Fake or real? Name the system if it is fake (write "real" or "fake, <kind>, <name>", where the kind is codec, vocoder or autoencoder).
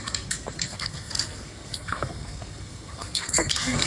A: fake, codec, SNAC